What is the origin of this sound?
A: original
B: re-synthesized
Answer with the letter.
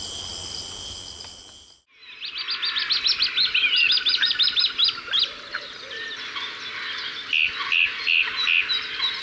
A